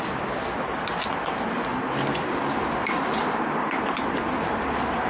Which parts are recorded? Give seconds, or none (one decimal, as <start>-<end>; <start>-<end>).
0.0-5.1

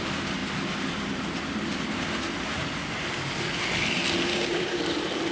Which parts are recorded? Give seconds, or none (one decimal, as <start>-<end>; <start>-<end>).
0.0-4.3; 4.8-5.3